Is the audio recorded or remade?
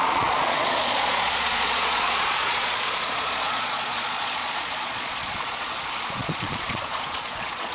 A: remade